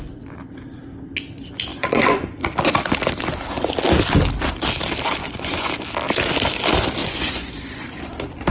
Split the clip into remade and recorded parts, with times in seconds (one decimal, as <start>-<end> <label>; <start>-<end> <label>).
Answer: 0.0-1.7 recorded; 1.7-2.4 remade; 2.4-5.2 recorded; 5.2-5.7 remade; 5.7-7.0 recorded; 7.0-8.0 remade; 8.0-8.5 recorded